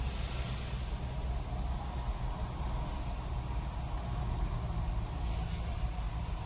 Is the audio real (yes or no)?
yes